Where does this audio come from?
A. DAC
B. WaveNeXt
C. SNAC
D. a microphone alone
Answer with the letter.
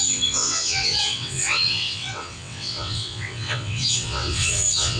B